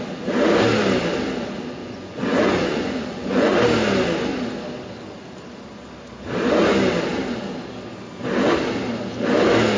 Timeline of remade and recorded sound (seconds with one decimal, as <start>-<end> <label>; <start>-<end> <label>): 0.0-1.8 recorded; 1.8-3.6 remade; 3.6-9.8 recorded